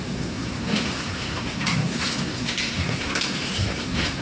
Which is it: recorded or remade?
remade